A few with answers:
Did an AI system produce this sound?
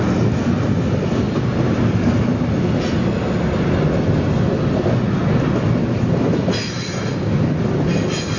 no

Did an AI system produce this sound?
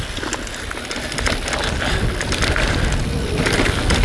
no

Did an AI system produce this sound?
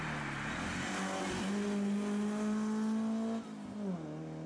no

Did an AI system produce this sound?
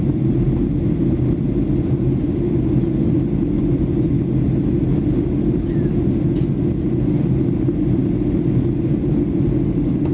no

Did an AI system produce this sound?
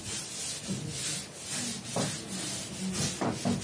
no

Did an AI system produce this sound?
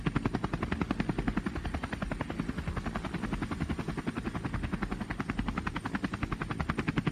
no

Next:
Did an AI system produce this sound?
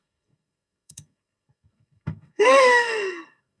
yes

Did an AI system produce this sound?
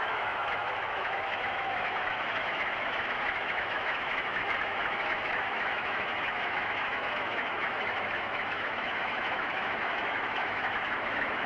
yes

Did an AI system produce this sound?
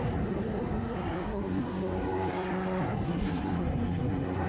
yes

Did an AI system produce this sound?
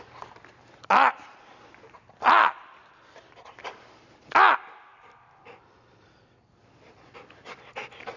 no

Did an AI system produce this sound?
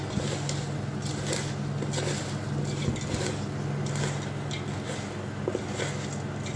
no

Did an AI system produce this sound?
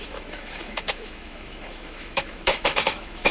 yes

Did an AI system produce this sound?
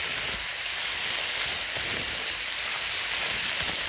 no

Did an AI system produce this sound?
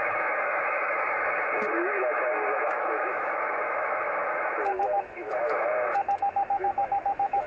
yes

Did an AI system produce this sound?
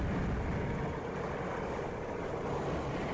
no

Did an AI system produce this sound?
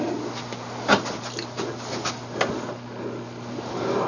no